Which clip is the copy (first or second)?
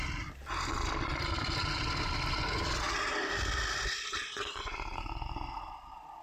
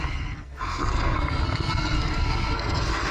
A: second